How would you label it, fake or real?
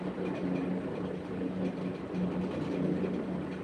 real